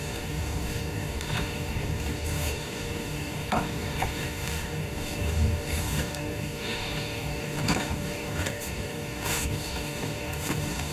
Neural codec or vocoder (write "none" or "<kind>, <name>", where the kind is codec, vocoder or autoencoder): codec, DAC